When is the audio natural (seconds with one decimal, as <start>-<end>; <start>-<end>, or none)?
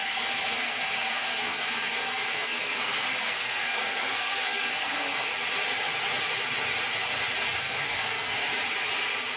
5.3-7.6; 8.5-9.4